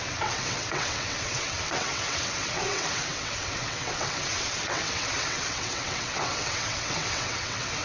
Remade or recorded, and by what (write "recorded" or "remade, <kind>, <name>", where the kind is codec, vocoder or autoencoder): remade, vocoder, WaveNeXt